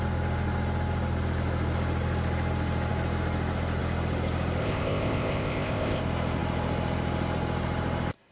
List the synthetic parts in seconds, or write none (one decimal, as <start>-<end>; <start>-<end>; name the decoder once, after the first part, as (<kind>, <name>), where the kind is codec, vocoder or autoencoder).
4.6-6.0 (codec, ZipCodec)